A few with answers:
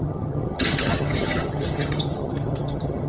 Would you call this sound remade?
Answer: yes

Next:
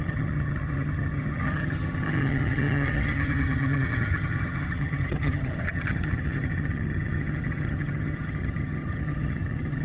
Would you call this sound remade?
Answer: yes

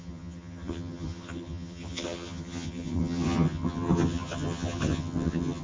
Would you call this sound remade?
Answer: yes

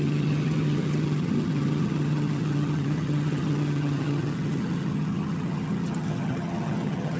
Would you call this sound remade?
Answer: yes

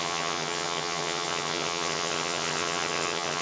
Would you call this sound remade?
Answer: yes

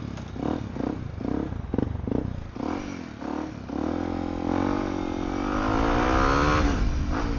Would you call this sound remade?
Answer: no